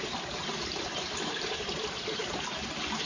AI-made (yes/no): yes